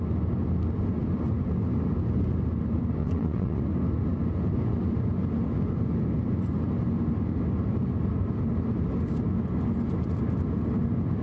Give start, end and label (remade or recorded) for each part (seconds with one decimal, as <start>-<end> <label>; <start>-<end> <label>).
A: 0.0-3.0 recorded; 3.0-3.6 remade; 3.6-11.2 recorded

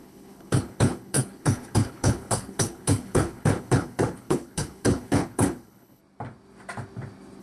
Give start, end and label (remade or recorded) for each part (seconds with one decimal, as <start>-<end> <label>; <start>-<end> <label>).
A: 0.0-6.0 remade; 6.0-7.4 recorded

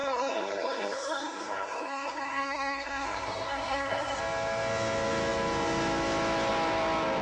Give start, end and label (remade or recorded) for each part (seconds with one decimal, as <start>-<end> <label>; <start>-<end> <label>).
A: 0.0-4.2 remade; 4.2-7.2 recorded